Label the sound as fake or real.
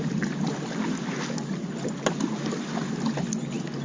real